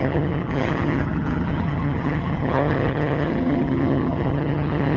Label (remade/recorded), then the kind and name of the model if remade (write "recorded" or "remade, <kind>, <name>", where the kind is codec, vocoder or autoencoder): remade, vocoder, HiFi-GAN